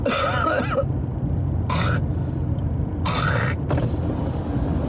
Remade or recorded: recorded